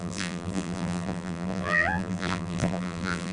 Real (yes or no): no